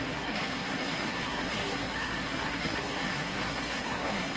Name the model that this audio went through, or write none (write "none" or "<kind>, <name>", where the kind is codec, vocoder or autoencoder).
codec, SNAC